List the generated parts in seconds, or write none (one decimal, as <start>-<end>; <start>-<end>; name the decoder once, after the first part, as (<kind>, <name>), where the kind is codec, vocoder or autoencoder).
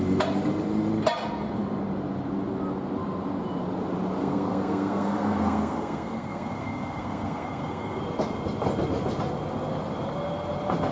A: 4.2-8.0 (codec, SNAC)